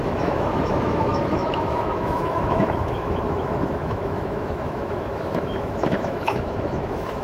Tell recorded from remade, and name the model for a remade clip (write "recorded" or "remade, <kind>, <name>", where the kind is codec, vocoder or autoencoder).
remade, autoencoder, DAC-VAE